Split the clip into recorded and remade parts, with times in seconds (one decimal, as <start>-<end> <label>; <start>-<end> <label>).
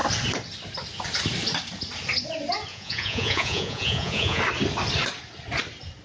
0.0-2.7 recorded; 2.7-4.4 remade; 4.4-6.0 recorded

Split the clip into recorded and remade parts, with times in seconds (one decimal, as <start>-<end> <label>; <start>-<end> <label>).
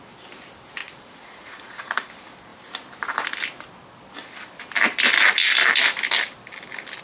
0.0-0.8 recorded; 0.8-2.1 remade; 2.1-7.0 recorded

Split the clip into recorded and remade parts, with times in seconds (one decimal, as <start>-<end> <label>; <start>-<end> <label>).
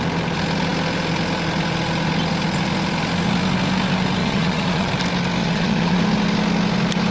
0.0-4.2 recorded; 4.2-4.9 remade; 4.9-5.4 recorded; 5.4-6.0 remade; 6.0-7.1 recorded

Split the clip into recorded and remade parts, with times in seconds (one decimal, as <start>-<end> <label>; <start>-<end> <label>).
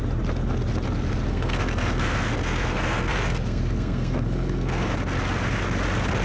0.0-1.3 recorded; 1.3-4.9 remade; 4.9-6.2 recorded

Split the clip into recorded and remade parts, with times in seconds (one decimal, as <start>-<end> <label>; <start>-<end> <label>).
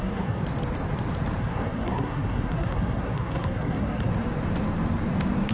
0.0-0.4 remade; 0.4-1.4 recorded; 1.4-4.1 remade; 4.1-5.5 recorded